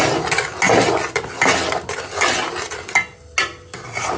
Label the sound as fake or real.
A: real